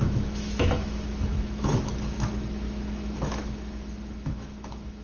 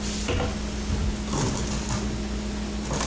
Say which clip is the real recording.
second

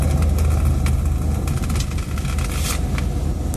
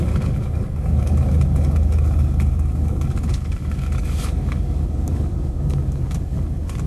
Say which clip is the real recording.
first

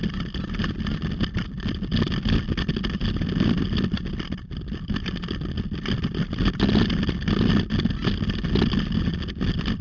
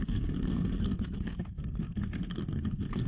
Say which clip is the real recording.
first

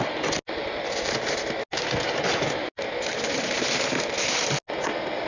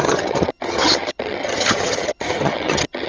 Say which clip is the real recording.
first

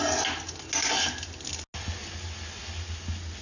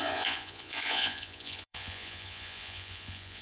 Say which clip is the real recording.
first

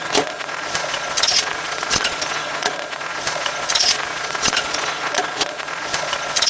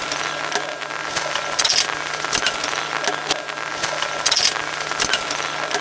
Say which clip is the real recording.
second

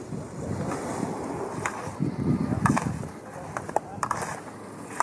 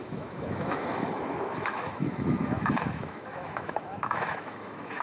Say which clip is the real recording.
first